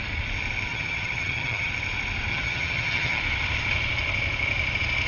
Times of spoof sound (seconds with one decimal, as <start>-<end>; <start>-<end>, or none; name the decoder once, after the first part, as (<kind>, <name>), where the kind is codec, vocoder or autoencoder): 0.7-1.7 (vocoder, HiFi-GAN); 2.3-3.2